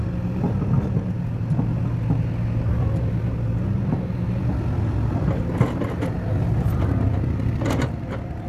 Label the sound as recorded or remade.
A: recorded